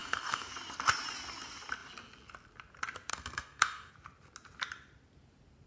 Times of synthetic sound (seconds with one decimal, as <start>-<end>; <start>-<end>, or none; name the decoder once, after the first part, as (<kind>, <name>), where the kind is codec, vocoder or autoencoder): 0.0-0.5 (codec, SNAC); 3.1-3.9